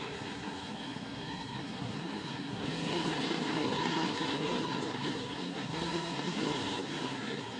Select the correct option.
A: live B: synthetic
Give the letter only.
B